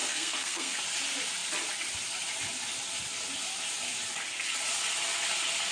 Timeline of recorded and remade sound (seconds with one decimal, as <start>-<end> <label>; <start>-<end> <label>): 0.0-0.8 remade; 0.8-5.7 recorded